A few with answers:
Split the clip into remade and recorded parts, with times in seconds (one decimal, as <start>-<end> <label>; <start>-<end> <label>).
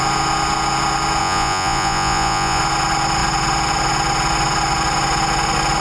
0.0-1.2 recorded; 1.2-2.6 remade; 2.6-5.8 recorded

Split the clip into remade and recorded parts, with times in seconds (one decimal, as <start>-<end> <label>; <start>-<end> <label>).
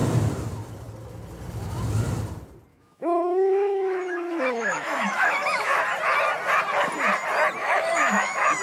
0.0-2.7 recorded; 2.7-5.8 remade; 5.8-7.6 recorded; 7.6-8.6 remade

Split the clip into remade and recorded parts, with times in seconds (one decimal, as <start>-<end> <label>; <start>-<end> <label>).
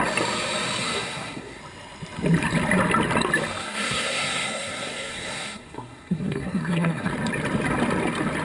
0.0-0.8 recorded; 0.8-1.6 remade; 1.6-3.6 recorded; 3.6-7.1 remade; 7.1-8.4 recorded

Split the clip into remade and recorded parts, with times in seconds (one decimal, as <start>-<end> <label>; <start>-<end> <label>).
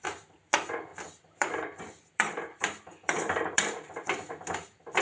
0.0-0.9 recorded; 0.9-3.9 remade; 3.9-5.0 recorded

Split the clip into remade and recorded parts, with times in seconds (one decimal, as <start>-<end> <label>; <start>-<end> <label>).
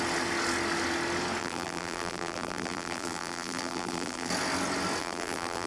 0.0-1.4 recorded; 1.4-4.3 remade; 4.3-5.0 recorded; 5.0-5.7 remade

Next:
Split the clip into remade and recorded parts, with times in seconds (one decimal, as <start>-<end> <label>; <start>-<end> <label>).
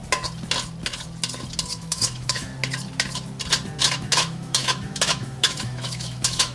0.0-1.7 recorded; 1.7-2.5 remade; 2.5-3.8 recorded; 3.8-6.5 remade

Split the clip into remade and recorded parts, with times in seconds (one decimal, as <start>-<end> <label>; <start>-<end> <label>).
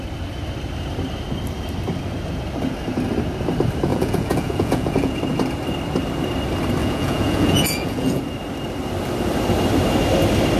0.0-3.9 recorded; 3.9-5.2 remade; 5.2-6.8 recorded; 6.8-8.2 remade; 8.2-10.6 recorded